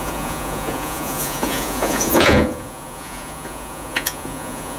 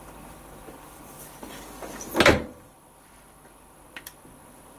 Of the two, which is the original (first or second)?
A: second